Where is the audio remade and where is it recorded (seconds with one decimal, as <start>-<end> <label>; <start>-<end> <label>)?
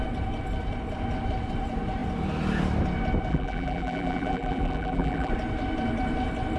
0.0-3.3 recorded; 3.3-5.3 remade; 5.3-6.6 recorded